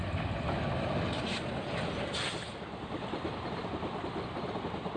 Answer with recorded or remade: recorded